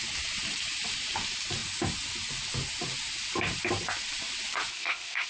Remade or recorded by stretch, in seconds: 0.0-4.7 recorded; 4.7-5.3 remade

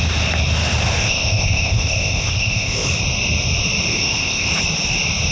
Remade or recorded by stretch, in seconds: 0.0-1.0 recorded; 1.0-2.9 remade; 2.9-3.9 recorded; 3.9-4.5 remade; 4.5-5.3 recorded

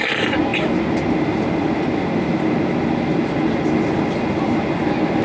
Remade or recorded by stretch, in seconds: 0.0-5.2 recorded

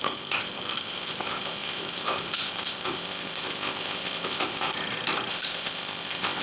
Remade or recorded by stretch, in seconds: 0.0-4.7 remade; 4.7-5.3 recorded; 5.3-6.4 remade

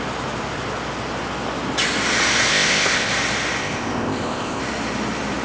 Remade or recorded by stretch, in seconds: 0.0-2.5 recorded; 2.5-3.1 remade; 3.1-3.6 recorded; 3.6-4.6 remade; 4.6-5.4 recorded

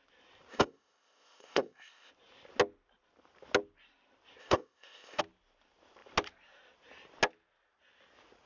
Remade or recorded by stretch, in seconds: 0.0-0.5 recorded; 0.5-2.1 remade; 2.1-4.4 recorded; 4.4-5.2 remade; 5.2-8.5 recorded

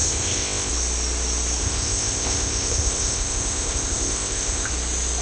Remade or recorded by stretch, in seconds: 0.0-0.7 remade; 0.7-1.6 recorded; 1.6-4.7 remade; 4.7-5.2 recorded